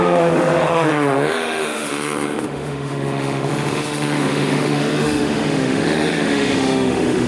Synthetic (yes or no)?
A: yes